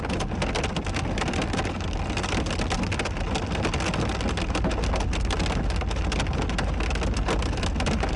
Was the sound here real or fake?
real